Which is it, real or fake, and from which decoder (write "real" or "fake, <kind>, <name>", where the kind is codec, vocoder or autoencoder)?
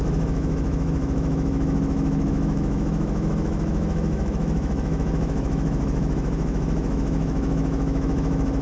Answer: fake, autoencoder, DAC-VAE